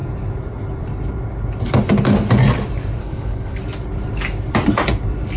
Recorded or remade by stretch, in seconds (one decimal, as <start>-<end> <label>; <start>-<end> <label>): 0.0-3.0 recorded; 3.0-3.6 remade; 3.6-5.4 recorded